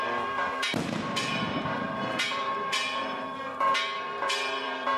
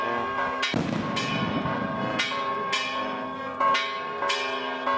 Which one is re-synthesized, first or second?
first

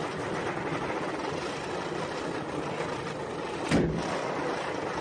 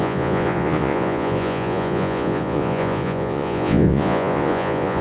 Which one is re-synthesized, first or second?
second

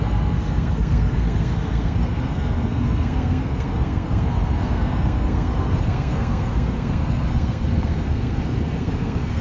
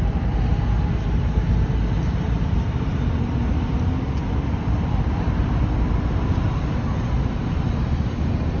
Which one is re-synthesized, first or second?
first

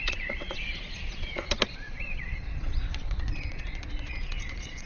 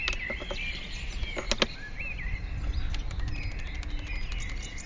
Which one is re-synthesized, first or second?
first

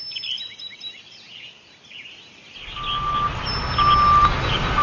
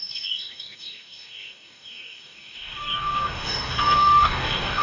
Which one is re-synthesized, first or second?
second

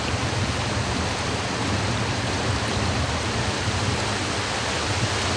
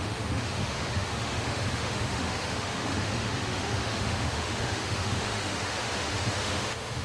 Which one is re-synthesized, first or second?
second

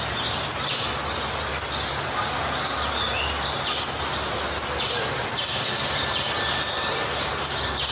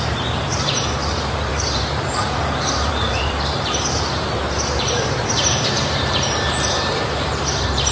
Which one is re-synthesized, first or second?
second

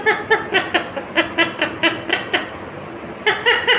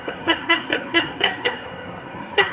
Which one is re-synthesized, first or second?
second